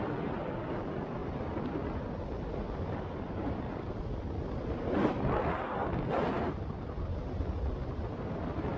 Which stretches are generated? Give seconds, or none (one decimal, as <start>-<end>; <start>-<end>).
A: none